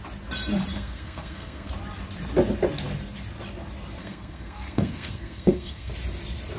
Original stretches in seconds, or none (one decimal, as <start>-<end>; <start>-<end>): 0.0-0.7; 1.7-4.0; 5.9-6.6